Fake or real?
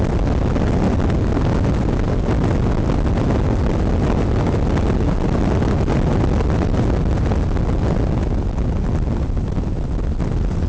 real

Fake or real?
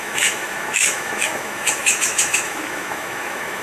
fake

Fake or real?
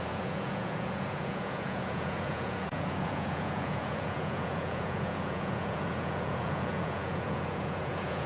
fake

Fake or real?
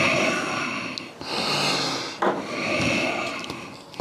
real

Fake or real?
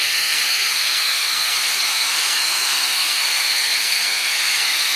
fake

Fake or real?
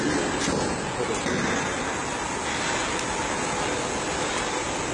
real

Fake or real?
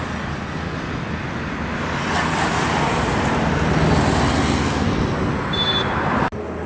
real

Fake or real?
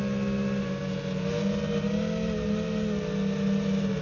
real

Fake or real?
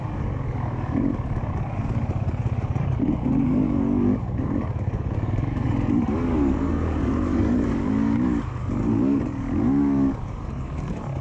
fake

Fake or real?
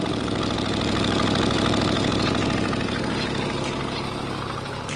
real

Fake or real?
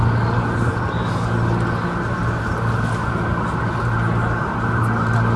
real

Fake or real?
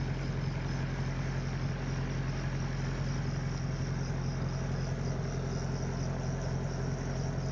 real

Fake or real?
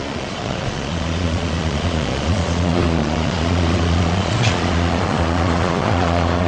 fake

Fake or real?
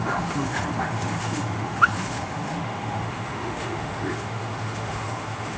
fake